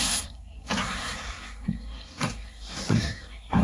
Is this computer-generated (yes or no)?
yes